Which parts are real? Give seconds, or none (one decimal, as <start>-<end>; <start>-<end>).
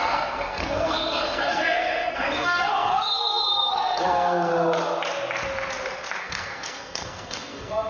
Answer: 4.5-6.2